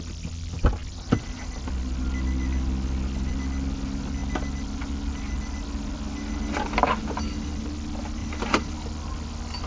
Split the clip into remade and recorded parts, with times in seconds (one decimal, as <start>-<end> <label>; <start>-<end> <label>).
0.0-0.8 recorded; 0.8-3.3 remade; 3.3-8.2 recorded; 8.2-8.7 remade; 8.7-9.7 recorded

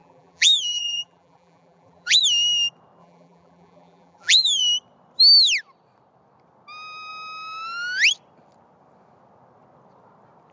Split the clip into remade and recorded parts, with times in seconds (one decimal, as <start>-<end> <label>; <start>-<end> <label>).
0.0-2.2 remade; 2.2-3.0 recorded; 3.0-4.6 remade; 4.6-10.5 recorded